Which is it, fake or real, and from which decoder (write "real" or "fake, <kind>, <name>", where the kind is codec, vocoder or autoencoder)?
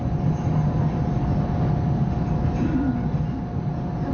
real